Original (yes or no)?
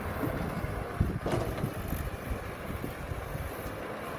yes